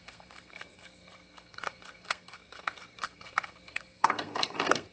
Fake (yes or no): yes